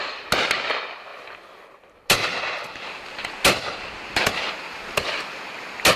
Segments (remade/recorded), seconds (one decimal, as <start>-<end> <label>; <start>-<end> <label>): 0.0-6.0 recorded